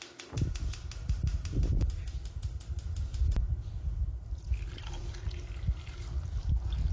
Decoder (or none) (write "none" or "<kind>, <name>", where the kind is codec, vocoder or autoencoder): none